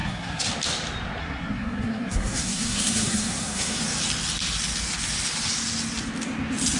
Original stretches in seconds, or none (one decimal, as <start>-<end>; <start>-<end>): 0.5-1.2; 3.8-6.8